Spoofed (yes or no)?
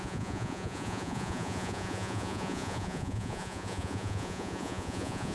yes